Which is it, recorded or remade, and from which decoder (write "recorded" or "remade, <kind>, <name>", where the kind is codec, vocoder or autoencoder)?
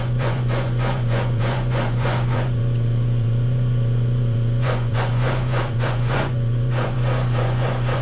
remade, vocoder, Vocos